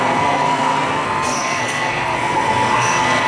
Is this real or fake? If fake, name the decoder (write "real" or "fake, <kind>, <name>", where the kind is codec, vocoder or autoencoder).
fake, codec, SNAC